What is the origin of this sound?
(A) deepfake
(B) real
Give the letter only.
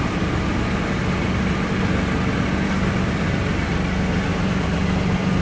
B